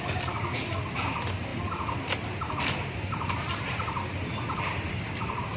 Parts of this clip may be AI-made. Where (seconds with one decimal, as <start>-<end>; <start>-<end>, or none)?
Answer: 1.5-3.6; 4.7-5.6